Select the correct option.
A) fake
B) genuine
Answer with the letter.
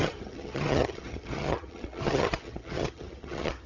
A